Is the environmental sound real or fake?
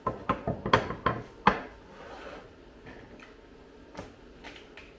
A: real